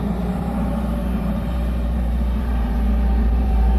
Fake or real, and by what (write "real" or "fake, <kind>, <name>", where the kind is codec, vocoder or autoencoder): fake, vocoder, BigVGAN v2